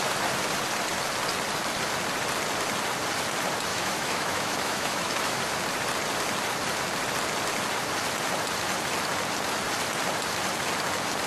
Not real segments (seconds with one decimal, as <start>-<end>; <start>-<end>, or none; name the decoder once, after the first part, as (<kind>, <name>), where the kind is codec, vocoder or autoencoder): 3.7-5.4 (autoencoder, DAC-VAE)